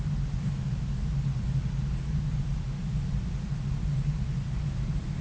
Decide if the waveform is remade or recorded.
recorded